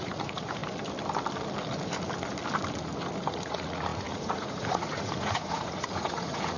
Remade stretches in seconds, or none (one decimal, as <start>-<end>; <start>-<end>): 0.0-0.6; 3.3-6.6